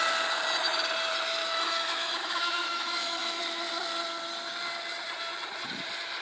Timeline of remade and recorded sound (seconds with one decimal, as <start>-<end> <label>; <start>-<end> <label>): 0.0-1.4 recorded; 1.4-3.4 remade; 3.4-6.2 recorded